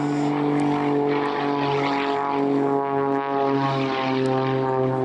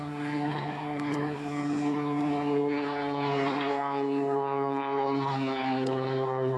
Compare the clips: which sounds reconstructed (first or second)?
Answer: second